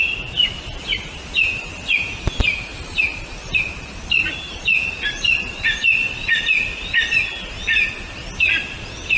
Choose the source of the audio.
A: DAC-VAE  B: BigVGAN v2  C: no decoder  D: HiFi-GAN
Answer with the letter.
C